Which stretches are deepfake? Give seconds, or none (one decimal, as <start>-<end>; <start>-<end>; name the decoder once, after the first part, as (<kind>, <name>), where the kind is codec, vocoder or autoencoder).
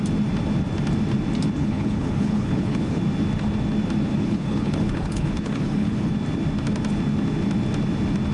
1.6-3.0 (codec, HILCodec); 4.1-6.1